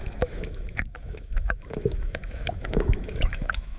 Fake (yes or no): yes